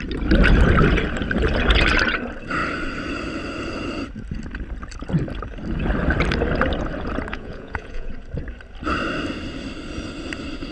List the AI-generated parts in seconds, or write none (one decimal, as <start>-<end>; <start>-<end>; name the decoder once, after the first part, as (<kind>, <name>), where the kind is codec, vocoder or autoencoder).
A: 7.3-8.1 (vocoder, Vocos)